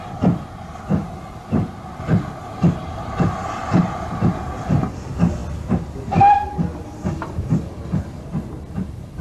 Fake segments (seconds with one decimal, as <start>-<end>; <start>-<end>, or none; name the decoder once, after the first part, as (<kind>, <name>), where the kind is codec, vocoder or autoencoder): 3.6-4.2 (vocoder, BigVGAN v2)